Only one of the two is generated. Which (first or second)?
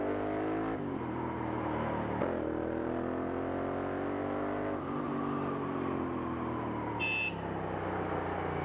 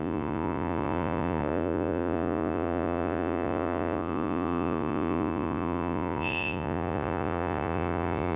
second